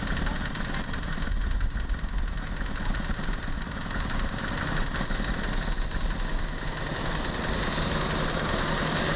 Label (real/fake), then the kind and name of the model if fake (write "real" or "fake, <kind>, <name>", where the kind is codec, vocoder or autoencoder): real